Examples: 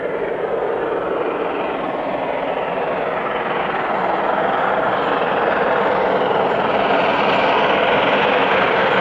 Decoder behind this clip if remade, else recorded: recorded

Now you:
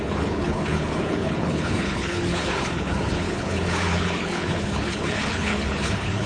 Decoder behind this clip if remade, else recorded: remade, codec, HILCodec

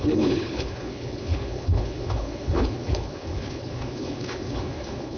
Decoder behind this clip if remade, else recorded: remade, codec, HILCodec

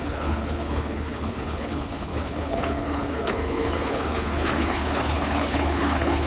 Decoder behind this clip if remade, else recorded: remade, codec, HILCodec